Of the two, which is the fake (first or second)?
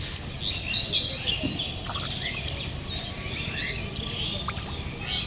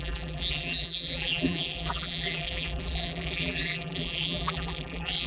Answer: second